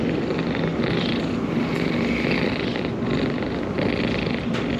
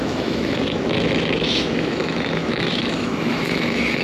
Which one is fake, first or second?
second